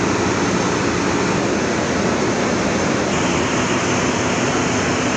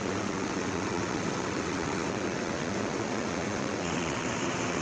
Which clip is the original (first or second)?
first